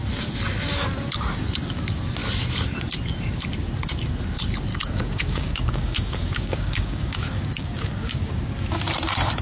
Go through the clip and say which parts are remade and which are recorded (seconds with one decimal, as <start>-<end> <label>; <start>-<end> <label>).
0.0-4.7 recorded; 4.7-8.5 remade; 8.5-9.4 recorded